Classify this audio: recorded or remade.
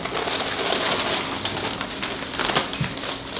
remade